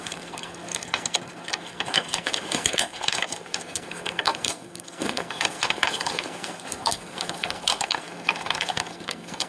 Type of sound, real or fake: fake